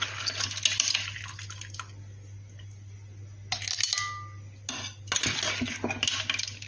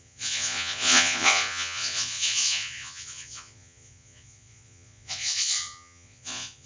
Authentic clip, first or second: first